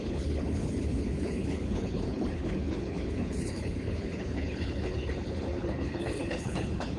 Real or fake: fake